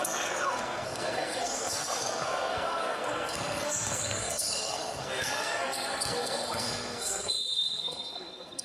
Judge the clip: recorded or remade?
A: remade